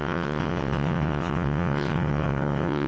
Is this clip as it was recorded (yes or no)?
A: no